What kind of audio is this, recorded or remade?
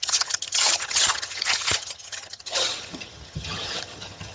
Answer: remade